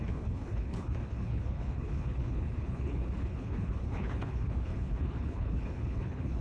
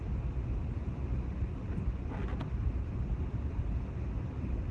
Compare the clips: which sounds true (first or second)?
second